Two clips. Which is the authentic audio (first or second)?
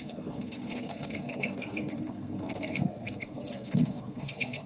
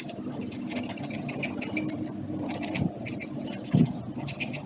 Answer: second